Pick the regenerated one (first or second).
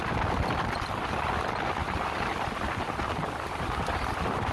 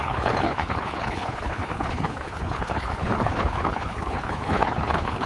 second